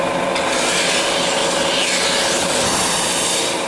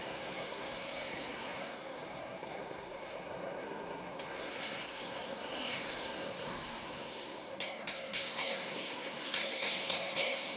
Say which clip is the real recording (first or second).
first